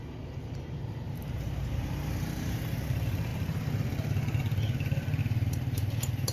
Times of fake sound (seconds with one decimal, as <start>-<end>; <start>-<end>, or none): 0.0-3.3; 5.2-6.3